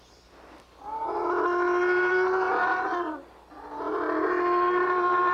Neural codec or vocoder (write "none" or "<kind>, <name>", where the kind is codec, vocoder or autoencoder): none